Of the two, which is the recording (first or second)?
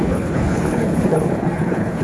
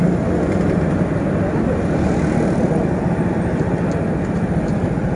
second